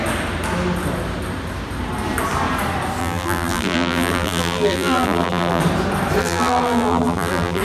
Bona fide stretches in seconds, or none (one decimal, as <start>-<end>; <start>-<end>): 0.0-3.0; 5.6-6.2